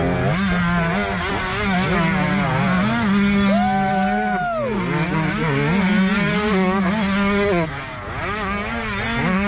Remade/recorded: recorded